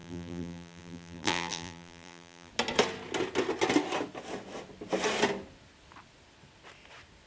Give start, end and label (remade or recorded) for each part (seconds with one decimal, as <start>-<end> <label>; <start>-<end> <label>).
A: 0.0-2.5 remade; 2.5-7.3 recorded